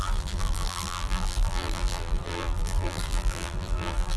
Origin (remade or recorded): remade